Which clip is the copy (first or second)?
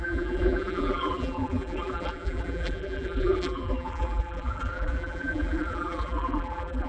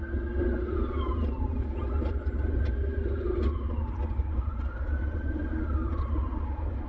first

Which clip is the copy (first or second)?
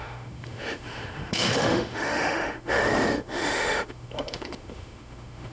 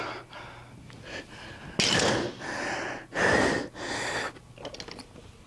first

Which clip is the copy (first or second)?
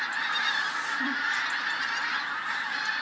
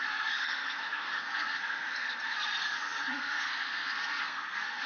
second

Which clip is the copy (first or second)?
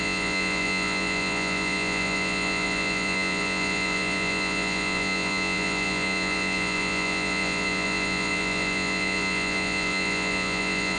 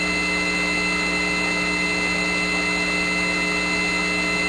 first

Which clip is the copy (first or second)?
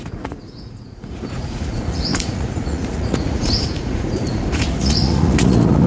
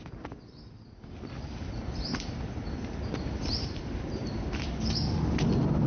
first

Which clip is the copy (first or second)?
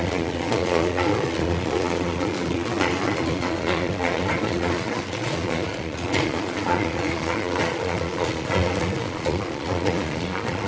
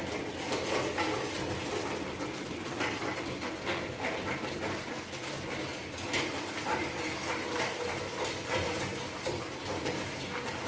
first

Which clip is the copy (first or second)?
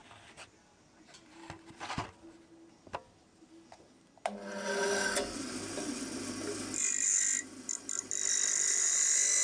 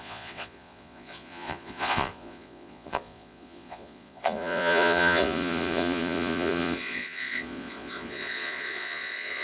second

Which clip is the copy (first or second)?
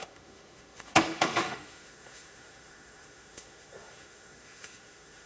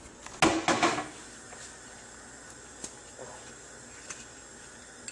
first